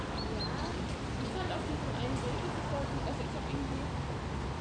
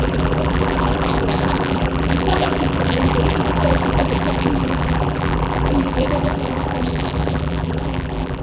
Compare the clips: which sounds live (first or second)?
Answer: first